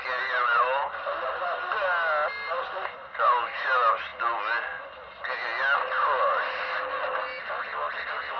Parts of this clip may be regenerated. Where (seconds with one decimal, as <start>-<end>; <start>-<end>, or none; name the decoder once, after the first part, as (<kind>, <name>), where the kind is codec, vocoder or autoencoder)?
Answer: none